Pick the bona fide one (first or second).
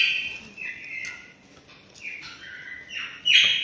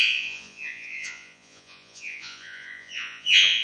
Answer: first